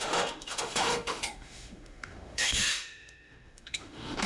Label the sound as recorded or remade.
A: remade